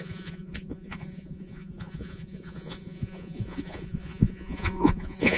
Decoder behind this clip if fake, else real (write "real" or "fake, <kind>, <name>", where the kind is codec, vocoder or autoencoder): fake, vocoder, Vocos